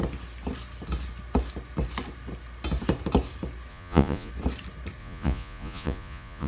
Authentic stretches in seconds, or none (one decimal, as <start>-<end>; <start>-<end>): 0.0-3.7; 4.3-5.0